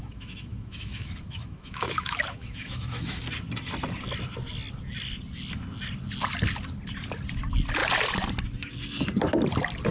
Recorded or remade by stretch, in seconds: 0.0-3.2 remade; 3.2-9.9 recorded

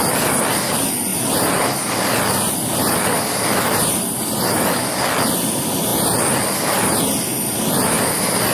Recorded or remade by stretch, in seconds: 0.0-8.5 recorded

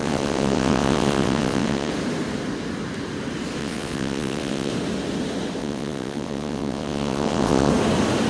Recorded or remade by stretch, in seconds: 0.0-1.9 remade; 1.9-3.6 recorded; 3.6-4.7 remade; 4.7-5.6 recorded; 5.6-7.7 remade; 7.7-8.3 recorded

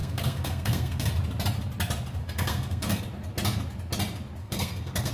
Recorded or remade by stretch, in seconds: 0.0-1.1 remade; 1.1-2.2 recorded; 2.2-3.0 remade; 3.0-4.4 recorded; 4.4-5.1 remade

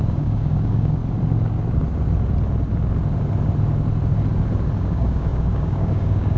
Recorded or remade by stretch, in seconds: 0.0-1.0 remade; 1.0-4.8 recorded; 4.8-6.4 remade

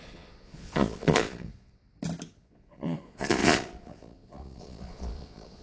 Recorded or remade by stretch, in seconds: 0.0-1.8 remade; 1.8-2.4 recorded; 2.4-5.6 remade

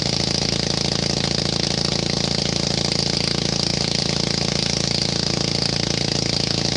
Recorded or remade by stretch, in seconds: 0.0-6.8 recorded